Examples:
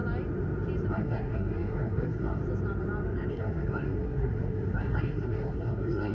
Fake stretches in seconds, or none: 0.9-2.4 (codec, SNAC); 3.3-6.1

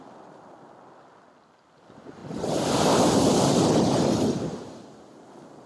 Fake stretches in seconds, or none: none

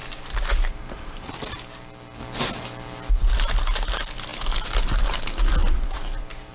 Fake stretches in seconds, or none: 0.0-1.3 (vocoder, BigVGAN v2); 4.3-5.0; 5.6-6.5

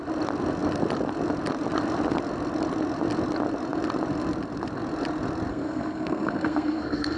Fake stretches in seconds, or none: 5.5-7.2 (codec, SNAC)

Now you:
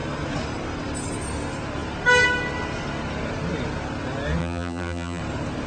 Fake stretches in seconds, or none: 4.4-5.2 (vocoder, BigVGAN v2)

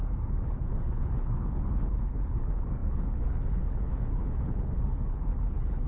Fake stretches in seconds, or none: 0.0-5.9 (codec, HILCodec)

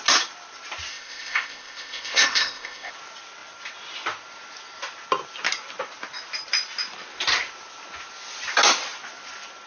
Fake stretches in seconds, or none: 0.9-2.9 (codec, ZipCodec)

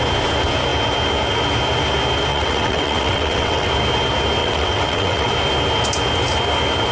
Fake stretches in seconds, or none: 2.3-3.7 (vocoder, WaveNeXt); 4.4-5.3